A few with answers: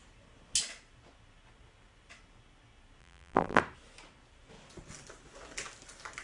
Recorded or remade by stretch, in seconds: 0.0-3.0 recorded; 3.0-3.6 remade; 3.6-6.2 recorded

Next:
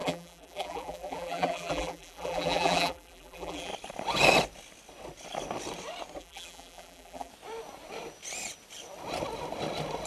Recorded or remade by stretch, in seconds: 0.0-3.7 remade; 3.7-6.2 recorded; 6.2-7.3 remade; 7.3-10.1 recorded

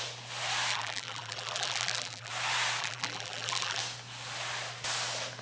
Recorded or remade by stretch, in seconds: 0.0-0.7 recorded; 0.7-2.3 remade; 2.3-2.8 recorded; 2.8-3.8 remade; 3.8-5.4 recorded